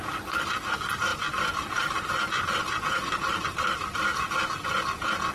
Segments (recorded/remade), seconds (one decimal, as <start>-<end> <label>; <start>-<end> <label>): 0.0-1.1 recorded; 1.1-4.3 remade; 4.3-5.3 recorded

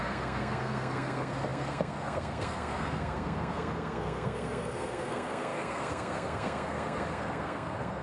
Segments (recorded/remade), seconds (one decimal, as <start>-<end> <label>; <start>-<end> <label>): 0.0-8.0 remade

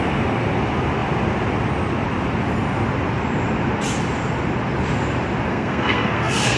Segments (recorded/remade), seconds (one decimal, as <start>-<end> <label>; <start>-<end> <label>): 0.0-5.5 recorded; 5.5-6.6 remade

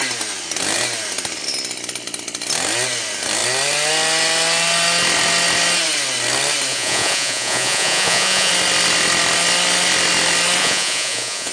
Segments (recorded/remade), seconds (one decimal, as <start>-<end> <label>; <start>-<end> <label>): 0.0-6.7 recorded; 6.7-8.5 remade; 8.5-10.6 recorded; 10.6-11.5 remade